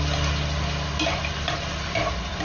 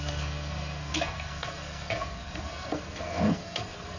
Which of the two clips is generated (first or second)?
second